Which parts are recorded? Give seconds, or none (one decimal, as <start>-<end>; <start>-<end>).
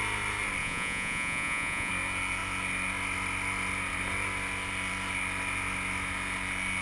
0.0-0.6; 1.9-6.8